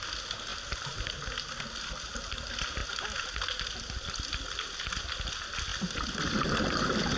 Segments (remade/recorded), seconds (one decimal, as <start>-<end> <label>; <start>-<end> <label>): 0.0-7.2 recorded